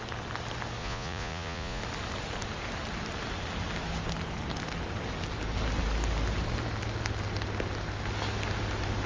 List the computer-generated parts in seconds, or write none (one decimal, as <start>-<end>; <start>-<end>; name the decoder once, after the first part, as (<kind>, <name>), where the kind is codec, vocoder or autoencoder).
0.8-1.8 (vocoder, Vocos)